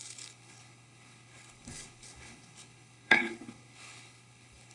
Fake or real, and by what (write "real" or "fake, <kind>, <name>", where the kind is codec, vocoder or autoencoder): fake, codec, HILCodec